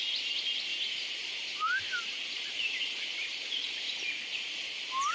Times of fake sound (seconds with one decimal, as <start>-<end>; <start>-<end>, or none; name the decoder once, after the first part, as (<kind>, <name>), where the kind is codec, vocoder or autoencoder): 0.7-3.8 (vocoder, BigVGAN v2)